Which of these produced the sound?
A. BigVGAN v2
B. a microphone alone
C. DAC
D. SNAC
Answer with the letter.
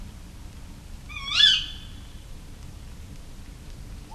B